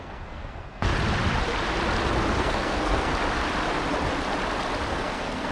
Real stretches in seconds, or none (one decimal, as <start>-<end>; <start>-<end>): 0.9-2.4; 3.1-4.9